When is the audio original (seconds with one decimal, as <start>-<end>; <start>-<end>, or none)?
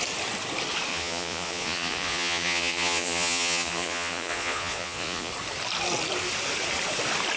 0.0-0.9; 5.3-7.4